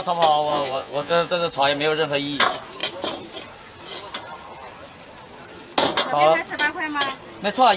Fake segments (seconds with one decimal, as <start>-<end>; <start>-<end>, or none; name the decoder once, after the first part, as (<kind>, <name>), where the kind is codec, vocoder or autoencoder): 0.5-1.3 (vocoder, Vocos)